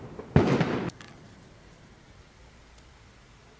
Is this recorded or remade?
recorded